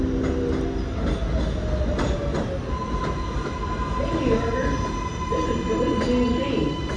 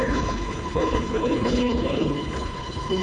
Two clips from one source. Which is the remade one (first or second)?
second